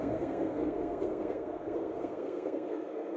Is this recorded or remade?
remade